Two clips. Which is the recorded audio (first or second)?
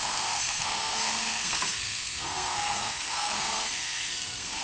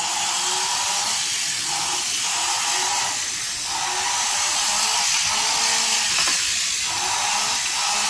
second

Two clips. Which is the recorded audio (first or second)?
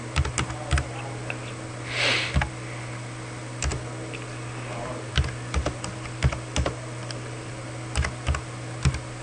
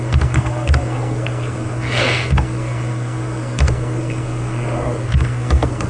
first